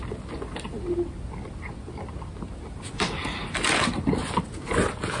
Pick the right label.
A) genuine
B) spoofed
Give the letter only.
A